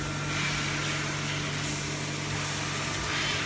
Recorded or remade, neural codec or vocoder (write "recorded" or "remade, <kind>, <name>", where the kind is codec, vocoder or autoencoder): recorded